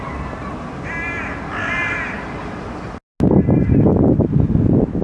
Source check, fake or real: real